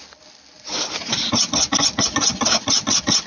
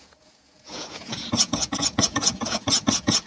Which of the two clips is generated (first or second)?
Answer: second